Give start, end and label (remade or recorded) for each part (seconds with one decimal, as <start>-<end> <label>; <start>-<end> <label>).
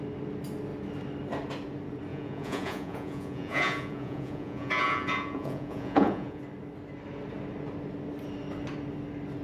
0.0-2.1 recorded; 2.1-6.4 remade; 6.4-9.4 recorded